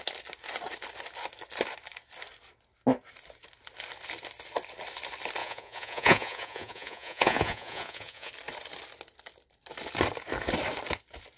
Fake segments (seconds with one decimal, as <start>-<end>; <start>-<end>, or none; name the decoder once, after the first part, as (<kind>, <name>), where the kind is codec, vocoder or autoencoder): 5.4-8.3 (vocoder, Vocos)